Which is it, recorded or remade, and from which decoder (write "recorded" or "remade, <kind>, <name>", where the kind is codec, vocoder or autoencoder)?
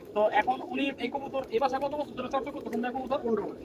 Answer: remade, codec, DAC